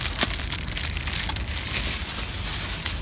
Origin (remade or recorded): recorded